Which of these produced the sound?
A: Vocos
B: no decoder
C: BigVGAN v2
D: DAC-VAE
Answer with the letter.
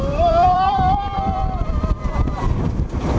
C